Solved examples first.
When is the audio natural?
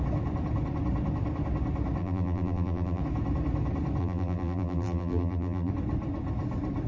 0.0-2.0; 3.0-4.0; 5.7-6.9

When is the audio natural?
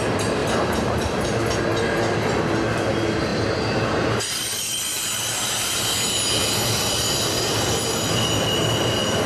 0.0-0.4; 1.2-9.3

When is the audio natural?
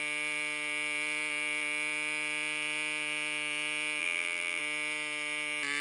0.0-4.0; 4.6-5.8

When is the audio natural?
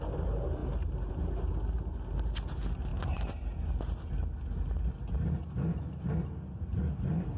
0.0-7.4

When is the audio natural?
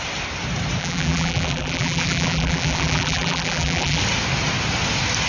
0.0-0.8; 4.0-5.3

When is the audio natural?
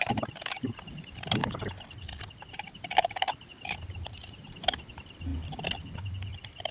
1.4-2.5; 5.3-6.7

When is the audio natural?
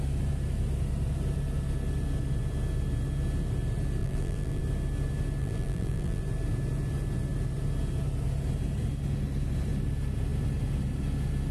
0.0-4.0; 4.6-5.4; 6.2-11.5